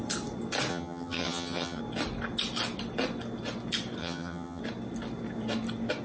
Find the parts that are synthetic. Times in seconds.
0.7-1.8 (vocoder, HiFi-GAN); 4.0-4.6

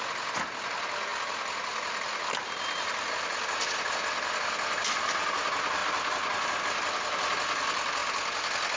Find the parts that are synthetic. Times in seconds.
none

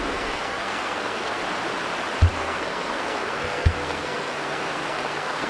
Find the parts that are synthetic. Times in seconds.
0.0-1.4 (codec, SNAC); 2.3-5.5

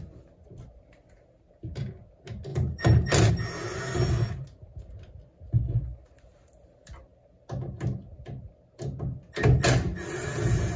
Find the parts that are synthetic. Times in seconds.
none